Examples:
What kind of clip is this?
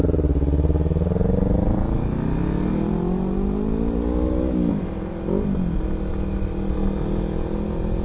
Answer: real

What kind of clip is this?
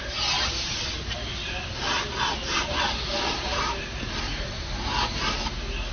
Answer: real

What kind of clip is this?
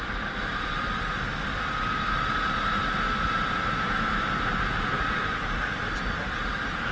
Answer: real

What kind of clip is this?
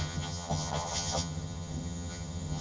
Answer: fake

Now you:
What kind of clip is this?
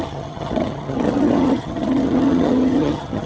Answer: fake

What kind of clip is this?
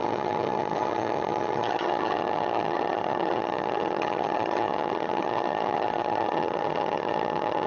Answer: fake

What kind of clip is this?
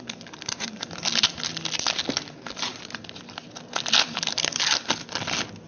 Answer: real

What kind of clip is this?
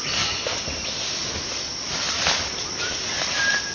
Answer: real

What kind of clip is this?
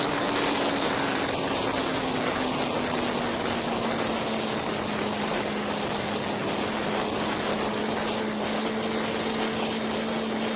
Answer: real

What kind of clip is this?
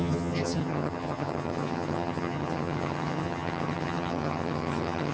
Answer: fake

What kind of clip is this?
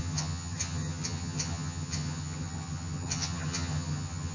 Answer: fake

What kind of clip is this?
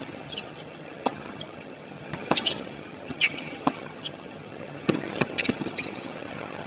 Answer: fake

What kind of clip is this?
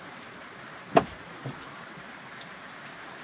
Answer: real